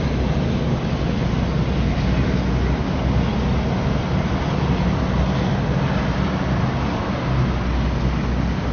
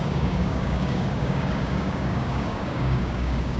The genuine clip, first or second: first